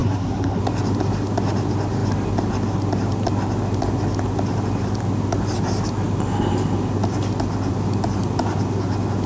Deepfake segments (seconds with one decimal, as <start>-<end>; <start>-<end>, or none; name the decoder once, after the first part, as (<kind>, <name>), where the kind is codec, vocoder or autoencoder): 0.0-0.6 (codec, SNAC)